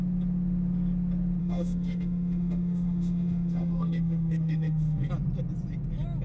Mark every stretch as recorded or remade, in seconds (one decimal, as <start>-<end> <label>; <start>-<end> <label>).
0.0-1.4 recorded; 1.4-5.1 remade; 5.1-6.2 recorded